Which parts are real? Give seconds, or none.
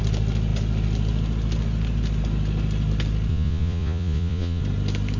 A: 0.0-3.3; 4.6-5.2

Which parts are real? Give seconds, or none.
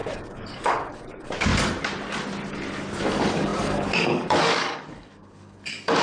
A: 1.5-3.0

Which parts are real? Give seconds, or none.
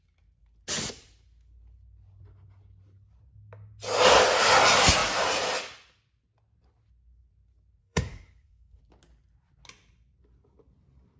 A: 0.0-7.8; 8.8-11.2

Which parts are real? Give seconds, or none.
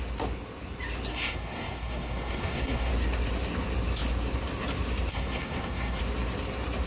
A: 0.0-1.1; 2.9-5.1; 6.0-6.9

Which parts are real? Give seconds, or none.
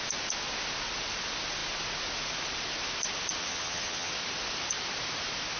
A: 0.0-3.4; 4.1-5.6